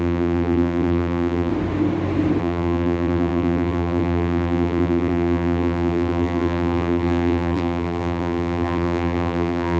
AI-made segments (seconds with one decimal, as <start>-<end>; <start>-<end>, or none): 0.0-1.5; 2.4-9.8